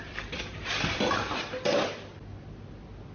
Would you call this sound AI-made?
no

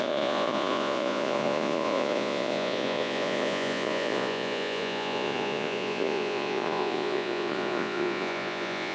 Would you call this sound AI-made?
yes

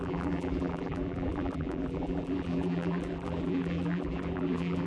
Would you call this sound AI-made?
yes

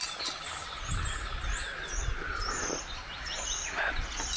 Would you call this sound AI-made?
no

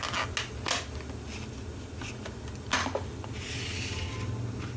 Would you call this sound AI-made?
no